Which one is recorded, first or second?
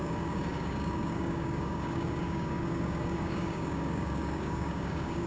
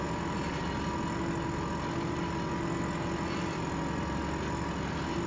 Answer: second